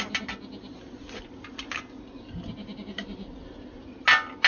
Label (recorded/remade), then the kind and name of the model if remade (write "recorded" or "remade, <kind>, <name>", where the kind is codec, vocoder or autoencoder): recorded